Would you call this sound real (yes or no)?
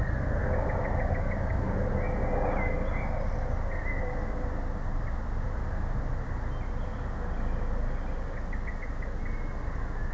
yes